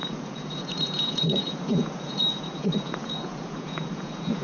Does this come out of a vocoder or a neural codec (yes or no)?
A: yes